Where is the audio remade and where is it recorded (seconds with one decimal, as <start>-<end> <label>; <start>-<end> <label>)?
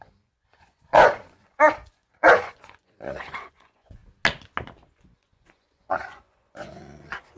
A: 0.0-4.0 remade; 4.0-4.9 recorded; 4.9-7.4 remade